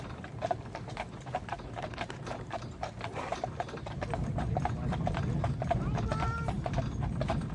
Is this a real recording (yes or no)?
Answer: no